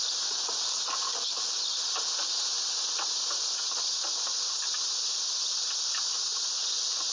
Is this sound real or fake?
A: real